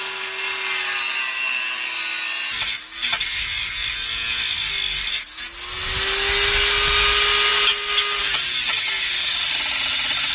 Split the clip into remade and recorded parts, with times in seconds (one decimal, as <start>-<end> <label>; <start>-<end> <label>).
0.0-10.3 recorded